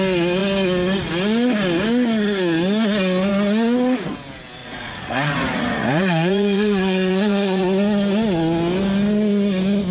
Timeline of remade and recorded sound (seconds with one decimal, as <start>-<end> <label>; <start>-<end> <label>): 0.0-4.6 recorded; 4.6-7.6 remade; 7.6-9.9 recorded